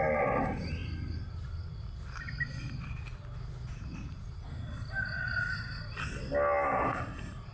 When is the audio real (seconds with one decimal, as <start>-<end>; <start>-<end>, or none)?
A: 0.0-7.5